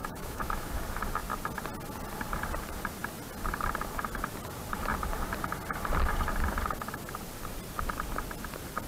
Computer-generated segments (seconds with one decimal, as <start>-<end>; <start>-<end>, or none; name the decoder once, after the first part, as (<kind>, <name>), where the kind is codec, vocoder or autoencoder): 0.0-0.7 (autoencoder, DAC-VAE)